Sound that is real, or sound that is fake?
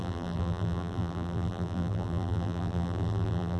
fake